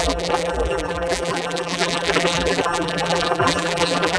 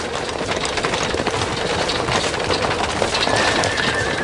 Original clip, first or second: second